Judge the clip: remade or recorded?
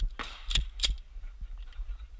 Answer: recorded